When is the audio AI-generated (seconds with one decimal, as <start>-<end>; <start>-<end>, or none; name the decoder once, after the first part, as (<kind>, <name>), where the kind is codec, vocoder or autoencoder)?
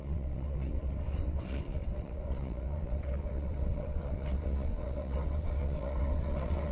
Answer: 0.0-6.7 (vocoder, WaveNeXt)